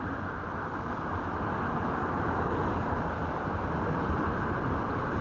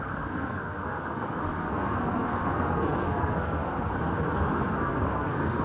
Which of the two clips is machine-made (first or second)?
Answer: second